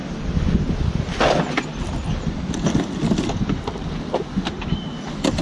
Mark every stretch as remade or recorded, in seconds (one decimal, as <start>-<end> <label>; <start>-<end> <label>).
0.0-5.4 recorded